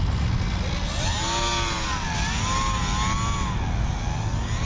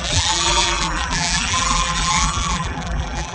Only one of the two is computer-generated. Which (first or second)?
second